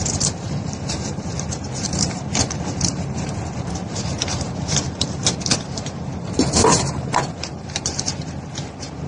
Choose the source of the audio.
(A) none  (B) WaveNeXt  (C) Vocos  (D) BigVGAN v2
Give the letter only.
D